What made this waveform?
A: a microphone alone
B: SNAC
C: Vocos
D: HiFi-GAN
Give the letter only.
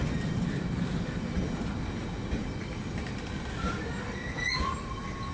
A